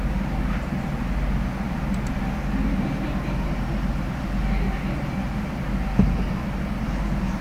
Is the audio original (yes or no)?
yes